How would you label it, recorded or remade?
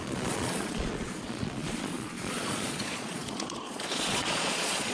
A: remade